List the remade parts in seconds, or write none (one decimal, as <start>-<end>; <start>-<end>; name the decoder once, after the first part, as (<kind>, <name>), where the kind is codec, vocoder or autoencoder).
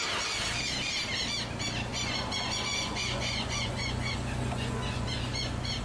1.9-5.8 (vocoder, Vocos)